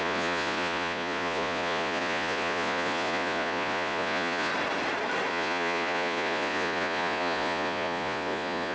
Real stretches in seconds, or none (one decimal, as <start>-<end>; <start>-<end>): 4.5-5.3